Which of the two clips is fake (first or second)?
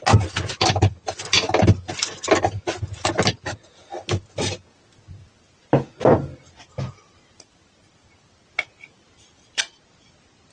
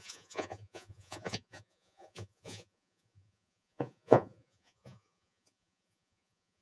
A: second